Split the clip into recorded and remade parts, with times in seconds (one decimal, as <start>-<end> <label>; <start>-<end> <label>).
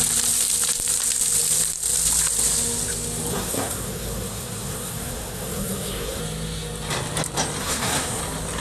0.0-3.3 recorded; 3.3-6.2 remade; 6.2-7.6 recorded; 7.6-8.2 remade; 8.2-8.6 recorded